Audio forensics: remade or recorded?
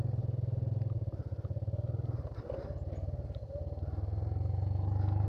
recorded